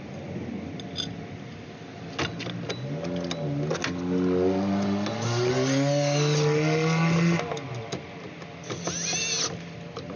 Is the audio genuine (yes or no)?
yes